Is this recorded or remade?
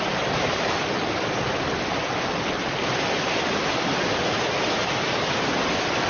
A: recorded